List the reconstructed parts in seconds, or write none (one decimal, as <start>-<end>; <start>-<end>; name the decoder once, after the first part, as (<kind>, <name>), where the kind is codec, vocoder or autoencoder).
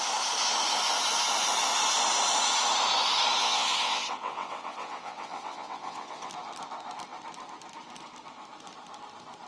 3.4-6.3 (vocoder, WaveNeXt)